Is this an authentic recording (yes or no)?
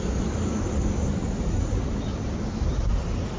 yes